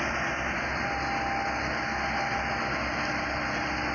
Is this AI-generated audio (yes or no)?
no